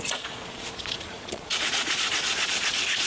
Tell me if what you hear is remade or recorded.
remade